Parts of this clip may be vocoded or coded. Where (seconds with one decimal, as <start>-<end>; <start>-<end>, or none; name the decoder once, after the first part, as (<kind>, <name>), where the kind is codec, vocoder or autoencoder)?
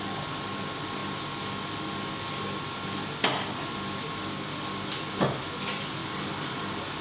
none